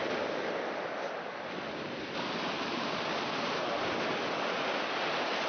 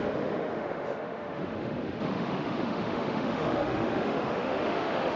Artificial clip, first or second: second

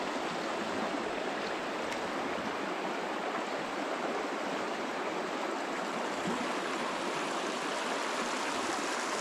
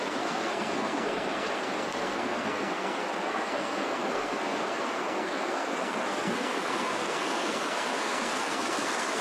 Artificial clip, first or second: second